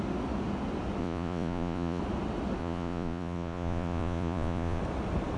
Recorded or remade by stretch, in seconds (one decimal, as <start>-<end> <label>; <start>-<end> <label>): 0.0-1.0 recorded; 1.0-2.0 remade; 2.0-2.6 recorded; 2.6-4.8 remade; 4.8-5.4 recorded